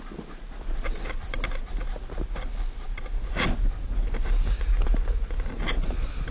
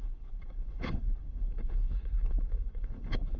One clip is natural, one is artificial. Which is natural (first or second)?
first